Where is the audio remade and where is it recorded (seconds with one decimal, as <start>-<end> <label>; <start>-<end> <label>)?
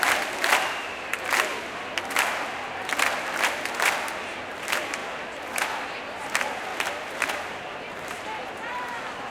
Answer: 0.0-0.5 remade; 0.5-4.4 recorded; 4.4-5.0 remade; 5.0-5.8 recorded; 5.8-6.7 remade; 6.7-7.5 recorded; 7.5-9.3 remade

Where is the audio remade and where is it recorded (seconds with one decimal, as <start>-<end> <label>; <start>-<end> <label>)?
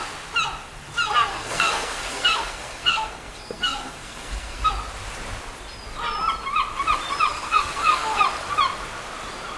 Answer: 0.0-1.3 recorded; 1.3-4.7 remade; 4.7-7.3 recorded; 7.3-8.2 remade; 8.2-9.6 recorded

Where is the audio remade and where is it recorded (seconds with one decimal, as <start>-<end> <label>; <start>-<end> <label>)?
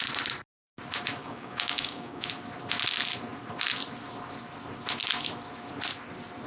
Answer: 0.0-1.2 recorded; 1.2-2.3 remade; 2.3-6.5 recorded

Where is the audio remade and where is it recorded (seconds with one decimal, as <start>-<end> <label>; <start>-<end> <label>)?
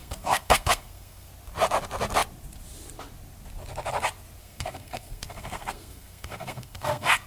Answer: 0.0-1.3 remade; 1.3-4.4 recorded; 4.4-7.3 remade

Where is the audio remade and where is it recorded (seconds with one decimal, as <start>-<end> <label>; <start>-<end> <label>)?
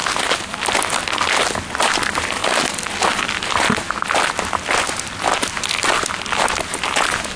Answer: 0.0-7.4 recorded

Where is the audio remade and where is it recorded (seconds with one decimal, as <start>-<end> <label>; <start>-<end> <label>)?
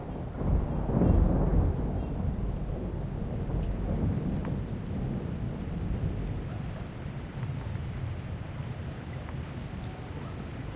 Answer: 0.0-1.5 recorded; 1.5-2.9 remade; 2.9-4.4 recorded; 4.4-8.6 remade; 8.6-10.8 recorded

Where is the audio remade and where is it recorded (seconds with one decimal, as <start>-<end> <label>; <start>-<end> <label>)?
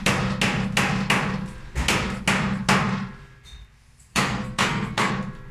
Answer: 0.0-4.1 recorded; 4.1-5.1 remade; 5.1-5.5 recorded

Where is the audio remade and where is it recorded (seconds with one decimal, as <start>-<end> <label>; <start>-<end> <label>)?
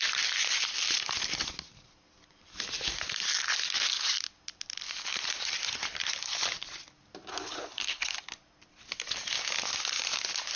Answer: 0.0-7.3 recorded; 7.3-8.2 remade; 8.2-10.6 recorded